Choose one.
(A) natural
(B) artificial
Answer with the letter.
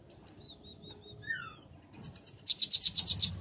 A